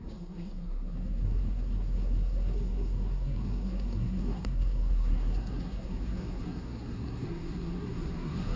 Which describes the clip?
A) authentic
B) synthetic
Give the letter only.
B